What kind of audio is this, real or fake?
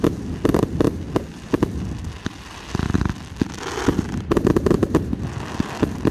real